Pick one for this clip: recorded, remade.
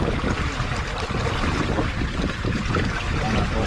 recorded